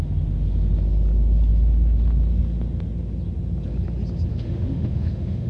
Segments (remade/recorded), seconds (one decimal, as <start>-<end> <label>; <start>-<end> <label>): 0.0-4.3 recorded; 4.3-5.5 remade